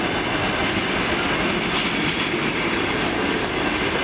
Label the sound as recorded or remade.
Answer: recorded